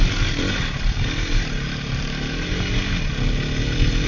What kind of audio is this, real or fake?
real